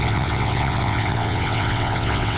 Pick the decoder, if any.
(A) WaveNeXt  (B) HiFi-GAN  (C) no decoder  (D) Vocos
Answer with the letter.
A